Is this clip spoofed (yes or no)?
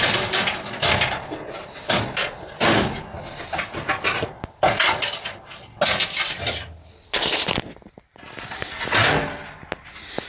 no